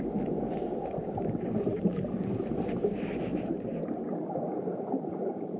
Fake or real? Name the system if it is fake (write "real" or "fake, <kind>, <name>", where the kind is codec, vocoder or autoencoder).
real